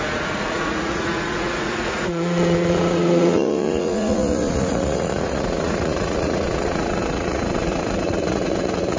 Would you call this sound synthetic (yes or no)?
yes